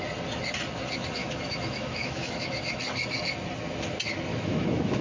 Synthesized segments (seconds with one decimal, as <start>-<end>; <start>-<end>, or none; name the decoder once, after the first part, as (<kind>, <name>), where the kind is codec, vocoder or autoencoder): 1.2-2.8 (autoencoder, DAC-VAE); 4.3-5.0